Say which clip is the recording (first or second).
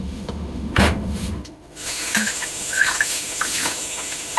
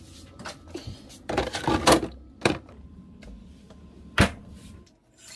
second